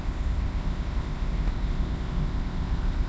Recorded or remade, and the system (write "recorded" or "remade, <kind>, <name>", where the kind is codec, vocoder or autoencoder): remade, codec, ZipCodec